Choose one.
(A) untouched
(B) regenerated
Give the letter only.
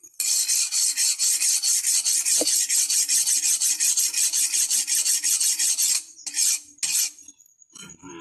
A